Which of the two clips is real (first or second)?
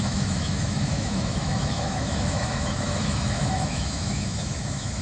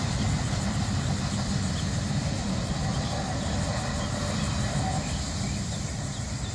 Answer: second